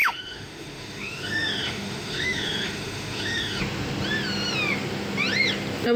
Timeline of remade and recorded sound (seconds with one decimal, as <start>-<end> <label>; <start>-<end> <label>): 0.0-3.6 remade; 3.6-6.0 recorded